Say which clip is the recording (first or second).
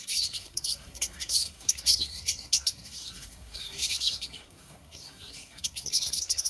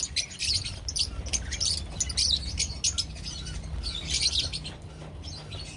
second